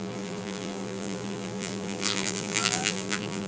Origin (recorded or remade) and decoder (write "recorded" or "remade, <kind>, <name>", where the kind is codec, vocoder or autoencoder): remade, vocoder, BigVGAN v2